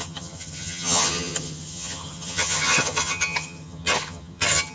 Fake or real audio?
fake